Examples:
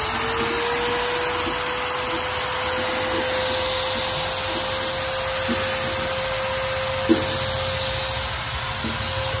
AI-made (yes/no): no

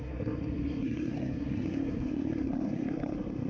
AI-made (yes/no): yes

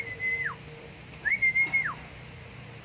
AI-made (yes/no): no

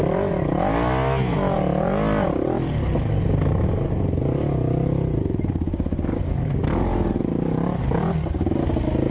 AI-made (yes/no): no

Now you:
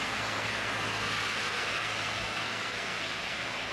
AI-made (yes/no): yes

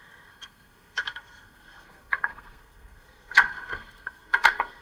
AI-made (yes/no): yes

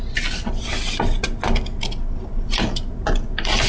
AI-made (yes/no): no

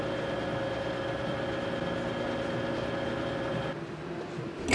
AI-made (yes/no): no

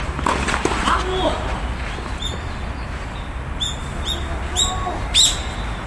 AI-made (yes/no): no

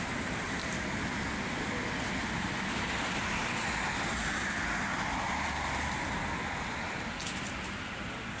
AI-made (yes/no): no